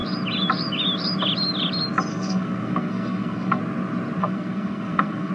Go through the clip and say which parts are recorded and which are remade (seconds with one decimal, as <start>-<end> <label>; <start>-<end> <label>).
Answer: 0.0-2.1 recorded; 2.1-3.6 remade; 3.6-4.2 recorded; 4.2-5.3 remade